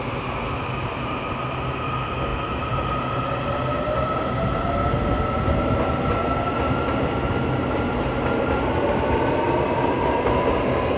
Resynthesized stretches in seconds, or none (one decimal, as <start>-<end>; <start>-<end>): none